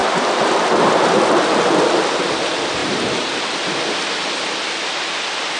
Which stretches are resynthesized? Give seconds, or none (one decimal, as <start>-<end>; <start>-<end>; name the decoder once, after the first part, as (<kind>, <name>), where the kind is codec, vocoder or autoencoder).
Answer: 2.8-3.7 (vocoder, BigVGAN v2)